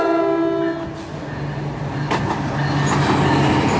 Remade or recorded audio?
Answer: recorded